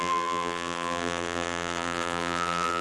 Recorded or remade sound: remade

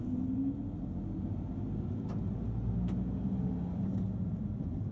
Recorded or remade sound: recorded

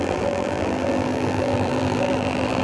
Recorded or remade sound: remade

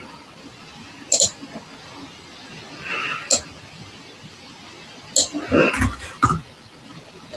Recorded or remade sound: recorded